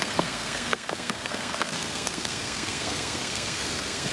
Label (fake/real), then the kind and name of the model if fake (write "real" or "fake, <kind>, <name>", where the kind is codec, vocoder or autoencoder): fake, codec, SNAC